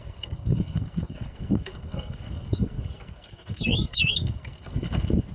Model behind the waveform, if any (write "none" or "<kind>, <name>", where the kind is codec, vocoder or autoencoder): codec, SNAC